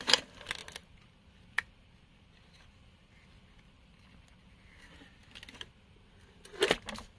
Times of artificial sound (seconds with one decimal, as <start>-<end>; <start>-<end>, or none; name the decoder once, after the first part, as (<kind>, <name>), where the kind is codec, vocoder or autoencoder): none